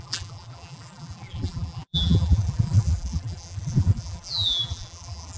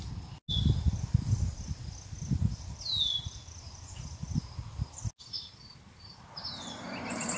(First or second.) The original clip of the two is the second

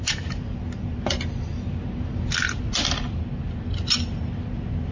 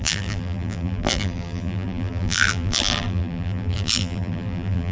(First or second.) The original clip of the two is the first